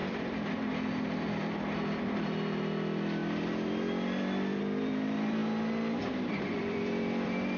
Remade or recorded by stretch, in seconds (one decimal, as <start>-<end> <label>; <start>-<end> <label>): 0.0-1.3 recorded; 1.3-5.4 remade; 5.4-6.4 recorded; 6.4-7.6 remade